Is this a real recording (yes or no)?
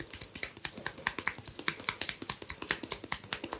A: yes